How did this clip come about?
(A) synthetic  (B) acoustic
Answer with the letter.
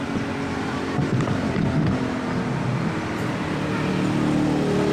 B